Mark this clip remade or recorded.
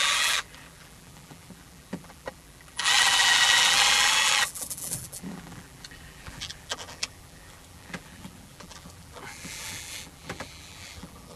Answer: remade